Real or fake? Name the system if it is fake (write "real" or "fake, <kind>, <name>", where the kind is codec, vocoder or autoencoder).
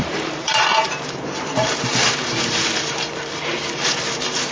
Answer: fake, vocoder, BigVGAN v2